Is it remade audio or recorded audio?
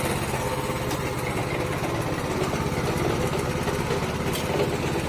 recorded